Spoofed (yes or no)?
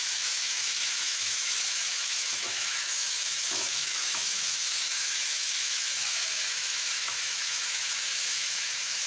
yes